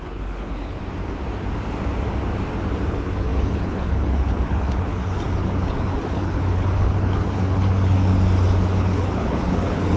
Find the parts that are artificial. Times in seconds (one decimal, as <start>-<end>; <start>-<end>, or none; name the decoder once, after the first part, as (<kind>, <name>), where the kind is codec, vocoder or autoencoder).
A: 0.0-0.8 (codec, HILCodec); 2.9-8.1; 8.8-10.0